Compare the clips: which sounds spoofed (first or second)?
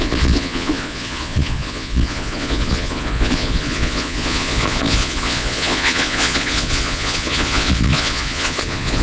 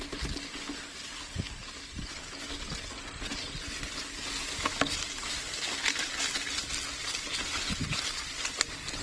first